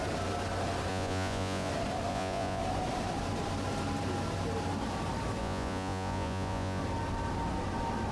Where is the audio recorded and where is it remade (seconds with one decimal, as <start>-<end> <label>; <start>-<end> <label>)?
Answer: 0.0-0.9 recorded; 0.9-1.7 remade; 1.7-2.1 recorded; 2.1-2.6 remade; 2.6-5.4 recorded; 5.4-6.8 remade; 6.8-8.1 recorded